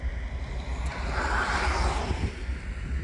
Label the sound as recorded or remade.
recorded